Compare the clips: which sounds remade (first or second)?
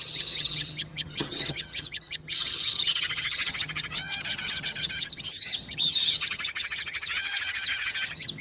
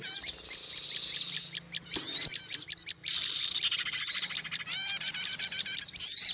first